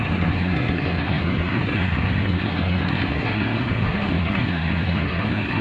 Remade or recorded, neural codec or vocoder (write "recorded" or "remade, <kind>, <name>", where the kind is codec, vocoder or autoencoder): remade, codec, SNAC